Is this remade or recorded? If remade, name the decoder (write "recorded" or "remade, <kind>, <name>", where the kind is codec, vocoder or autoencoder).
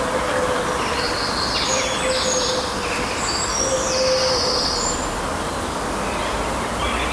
recorded